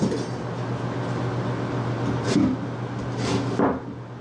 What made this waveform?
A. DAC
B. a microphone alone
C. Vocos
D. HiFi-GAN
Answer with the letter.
B